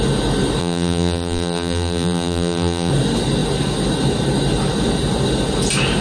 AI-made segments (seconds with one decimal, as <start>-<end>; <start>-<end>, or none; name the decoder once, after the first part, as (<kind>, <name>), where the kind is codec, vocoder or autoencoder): 0.6-2.9 (vocoder, BigVGAN v2)